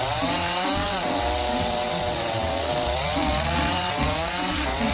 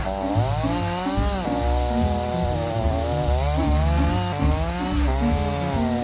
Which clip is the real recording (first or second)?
second